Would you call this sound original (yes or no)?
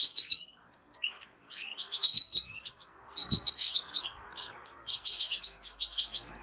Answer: no